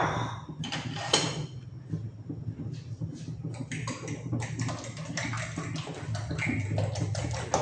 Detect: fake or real real